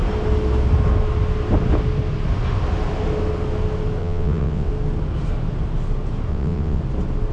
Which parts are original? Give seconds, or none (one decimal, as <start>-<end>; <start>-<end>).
0.0-4.0; 4.7-6.3; 6.8-7.3